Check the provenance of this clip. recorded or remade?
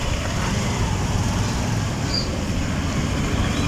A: remade